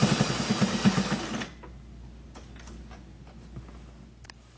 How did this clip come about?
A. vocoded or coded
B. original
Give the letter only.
B